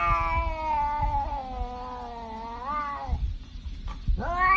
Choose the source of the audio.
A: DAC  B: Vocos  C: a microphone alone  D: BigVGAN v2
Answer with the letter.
C